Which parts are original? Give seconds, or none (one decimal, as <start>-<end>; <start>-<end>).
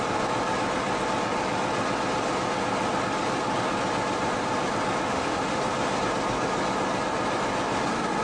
0.0-5.1; 5.6-8.2